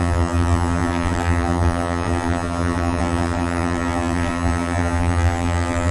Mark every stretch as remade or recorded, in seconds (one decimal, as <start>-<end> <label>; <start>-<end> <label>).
0.0-5.9 remade